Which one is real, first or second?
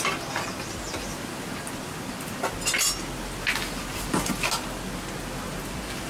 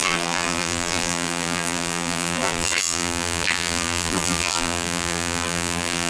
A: first